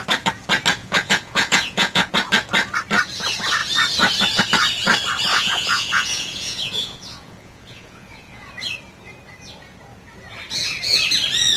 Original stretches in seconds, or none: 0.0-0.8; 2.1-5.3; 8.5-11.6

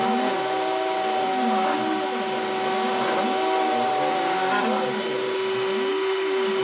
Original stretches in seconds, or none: 0.0-5.9

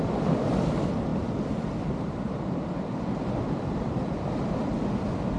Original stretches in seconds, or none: 0.0-5.4